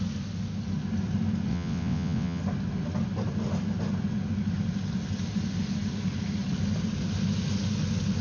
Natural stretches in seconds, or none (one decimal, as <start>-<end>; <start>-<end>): 0.0-1.5; 2.4-8.2